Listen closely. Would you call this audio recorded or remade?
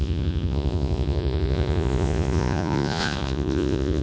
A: remade